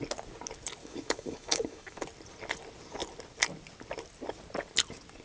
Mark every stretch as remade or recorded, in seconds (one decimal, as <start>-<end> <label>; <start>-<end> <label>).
0.0-0.8 recorded; 0.8-2.0 remade; 2.0-5.2 recorded